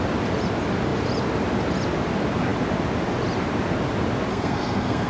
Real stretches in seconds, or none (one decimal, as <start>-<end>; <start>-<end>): 0.0-4.3